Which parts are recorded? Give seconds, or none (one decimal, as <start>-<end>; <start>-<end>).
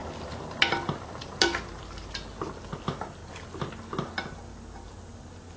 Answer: 0.0-5.6